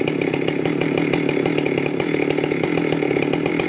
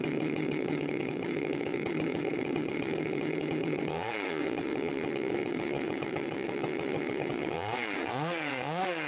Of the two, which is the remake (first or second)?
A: second